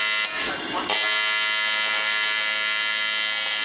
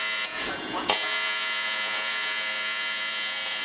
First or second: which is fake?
second